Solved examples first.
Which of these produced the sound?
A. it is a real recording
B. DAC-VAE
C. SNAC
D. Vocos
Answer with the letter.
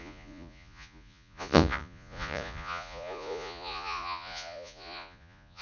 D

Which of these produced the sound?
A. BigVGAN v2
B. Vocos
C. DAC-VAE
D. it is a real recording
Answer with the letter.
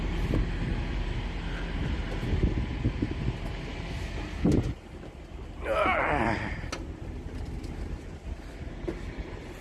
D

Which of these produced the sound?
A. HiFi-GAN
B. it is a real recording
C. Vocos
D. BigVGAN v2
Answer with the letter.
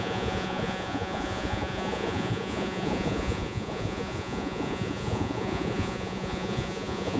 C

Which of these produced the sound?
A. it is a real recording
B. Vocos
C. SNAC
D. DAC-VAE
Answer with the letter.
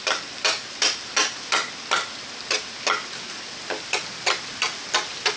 A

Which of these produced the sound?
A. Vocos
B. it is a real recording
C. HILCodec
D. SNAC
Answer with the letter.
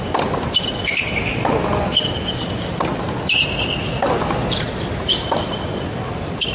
B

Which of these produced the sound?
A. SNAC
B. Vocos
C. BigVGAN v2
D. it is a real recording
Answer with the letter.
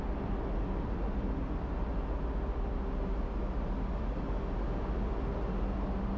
D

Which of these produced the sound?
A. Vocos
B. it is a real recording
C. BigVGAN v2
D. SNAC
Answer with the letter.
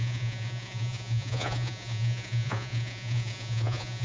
A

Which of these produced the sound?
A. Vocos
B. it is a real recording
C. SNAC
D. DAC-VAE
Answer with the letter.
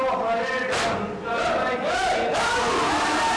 B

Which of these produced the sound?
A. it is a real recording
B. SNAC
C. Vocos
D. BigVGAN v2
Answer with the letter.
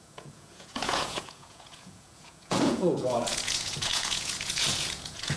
C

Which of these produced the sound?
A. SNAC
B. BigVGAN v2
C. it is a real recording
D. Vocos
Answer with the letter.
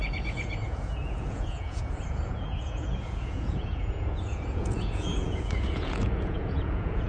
D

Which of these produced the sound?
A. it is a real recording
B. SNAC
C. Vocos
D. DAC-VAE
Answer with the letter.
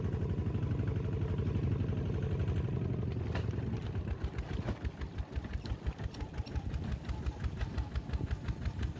A